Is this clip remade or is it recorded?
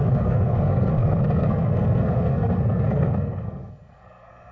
remade